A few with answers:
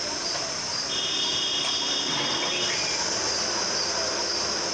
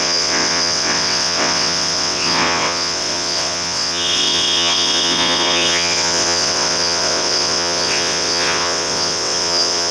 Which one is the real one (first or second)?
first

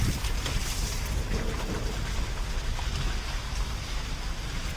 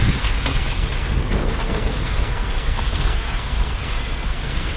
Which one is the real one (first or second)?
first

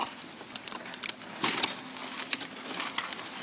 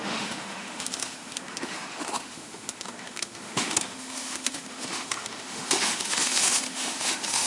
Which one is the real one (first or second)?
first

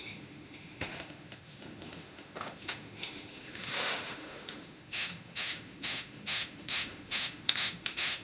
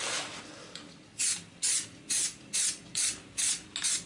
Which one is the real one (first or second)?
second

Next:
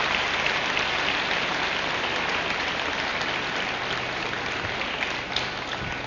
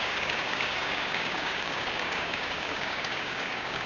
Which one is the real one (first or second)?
first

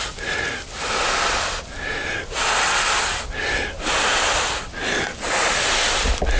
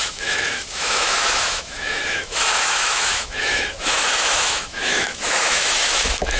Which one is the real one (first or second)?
first